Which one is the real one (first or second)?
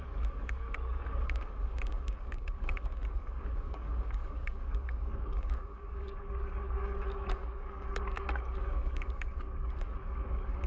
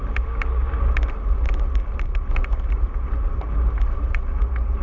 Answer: second